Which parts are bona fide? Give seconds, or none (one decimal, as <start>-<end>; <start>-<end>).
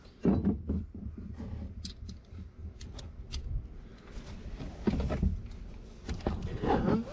0.0-7.1